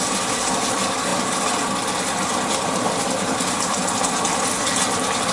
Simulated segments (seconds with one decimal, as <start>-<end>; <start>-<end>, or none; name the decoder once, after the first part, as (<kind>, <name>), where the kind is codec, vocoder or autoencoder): none